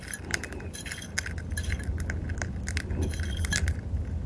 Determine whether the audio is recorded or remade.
recorded